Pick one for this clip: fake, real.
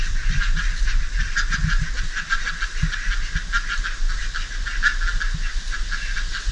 real